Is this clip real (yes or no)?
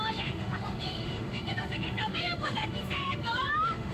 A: no